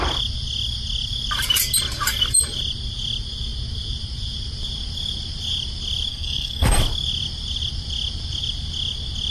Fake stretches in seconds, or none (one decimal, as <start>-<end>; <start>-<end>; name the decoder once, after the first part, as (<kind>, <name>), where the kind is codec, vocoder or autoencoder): 6.1-6.8 (codec, SNAC)